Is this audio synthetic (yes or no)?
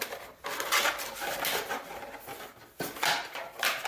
no